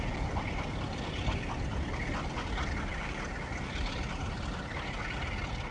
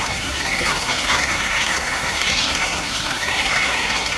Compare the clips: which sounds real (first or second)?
first